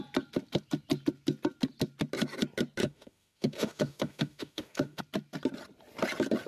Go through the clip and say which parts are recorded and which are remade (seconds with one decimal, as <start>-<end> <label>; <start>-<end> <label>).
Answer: 0.0-2.8 recorded; 2.8-5.0 remade; 5.0-6.5 recorded